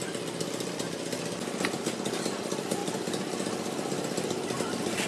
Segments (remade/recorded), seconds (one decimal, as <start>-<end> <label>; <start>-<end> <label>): 0.0-2.8 recorded; 2.8-4.6 remade; 4.6-5.1 recorded